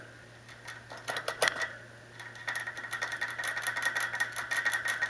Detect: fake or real real